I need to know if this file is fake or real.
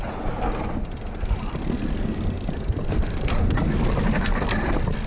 real